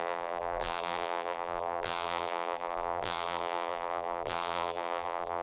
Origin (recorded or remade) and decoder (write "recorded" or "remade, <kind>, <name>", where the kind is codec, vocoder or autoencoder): remade, vocoder, BigVGAN v2